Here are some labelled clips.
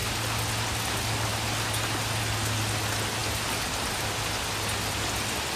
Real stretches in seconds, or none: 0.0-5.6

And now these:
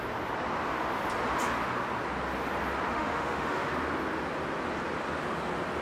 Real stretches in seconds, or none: 0.0-2.9; 3.7-5.8

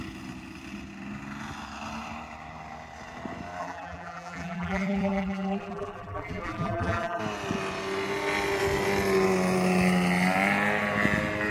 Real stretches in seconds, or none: 0.0-3.6; 7.2-11.5